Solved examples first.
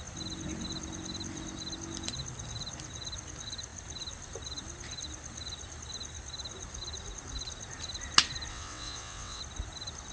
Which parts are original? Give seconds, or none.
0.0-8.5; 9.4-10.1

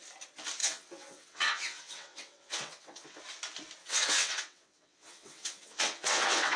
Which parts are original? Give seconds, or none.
0.0-0.6; 3.2-3.8

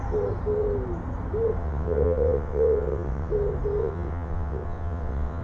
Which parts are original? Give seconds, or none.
0.0-1.6; 3.3-3.8